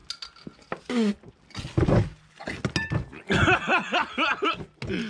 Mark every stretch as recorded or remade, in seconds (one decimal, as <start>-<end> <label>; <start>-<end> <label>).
0.0-5.1 recorded